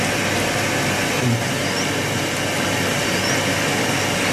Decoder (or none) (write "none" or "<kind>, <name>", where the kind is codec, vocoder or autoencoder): none